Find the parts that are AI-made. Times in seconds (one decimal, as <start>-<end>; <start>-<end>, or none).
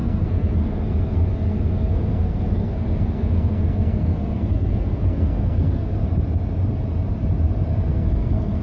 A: 0.0-6.0; 7.7-8.6